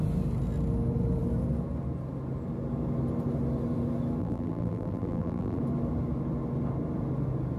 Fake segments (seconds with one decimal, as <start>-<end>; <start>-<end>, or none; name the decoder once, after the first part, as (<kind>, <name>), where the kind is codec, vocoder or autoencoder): 4.2-5.6 (vocoder, BigVGAN v2)